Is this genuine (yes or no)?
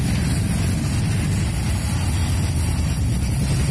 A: yes